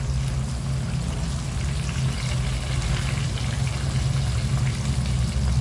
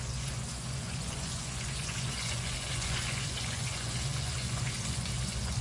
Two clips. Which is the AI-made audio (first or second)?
second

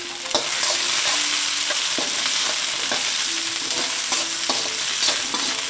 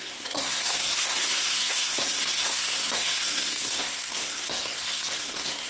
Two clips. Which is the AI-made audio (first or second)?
second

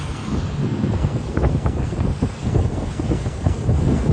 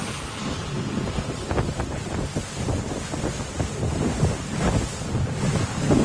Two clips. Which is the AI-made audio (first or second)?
first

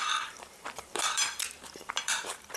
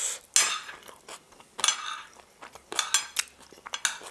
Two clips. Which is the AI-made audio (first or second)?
first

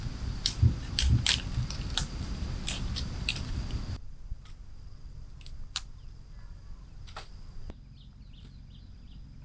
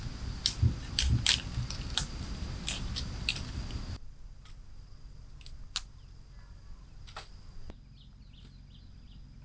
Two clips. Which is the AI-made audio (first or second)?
first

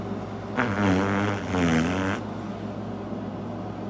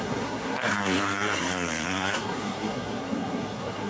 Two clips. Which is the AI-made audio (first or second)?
second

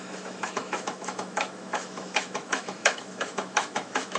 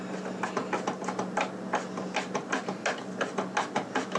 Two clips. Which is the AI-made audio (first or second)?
first